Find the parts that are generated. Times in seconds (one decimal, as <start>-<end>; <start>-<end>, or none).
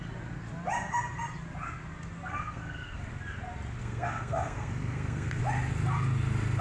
2.3-3.0; 3.8-5.4